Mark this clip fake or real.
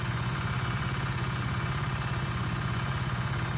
fake